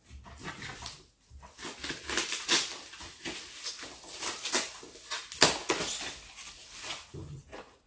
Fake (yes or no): no